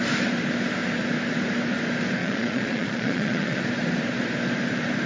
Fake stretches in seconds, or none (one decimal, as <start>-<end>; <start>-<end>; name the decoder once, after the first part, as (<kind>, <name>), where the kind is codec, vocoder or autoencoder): 2.2-3.6 (vocoder, Vocos)